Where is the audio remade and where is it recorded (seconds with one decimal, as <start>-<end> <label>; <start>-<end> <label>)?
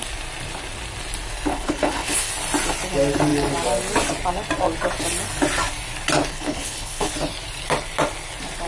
0.0-1.5 recorded; 1.5-2.3 remade; 2.3-6.3 recorded; 6.3-7.1 remade; 7.1-8.7 recorded